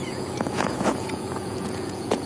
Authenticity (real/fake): fake